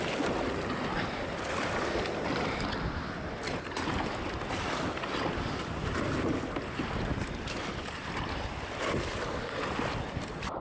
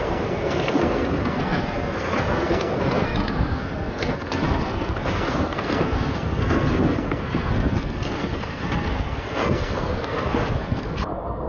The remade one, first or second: second